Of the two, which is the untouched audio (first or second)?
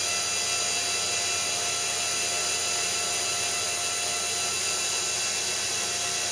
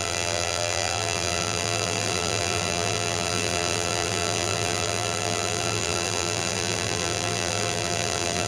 first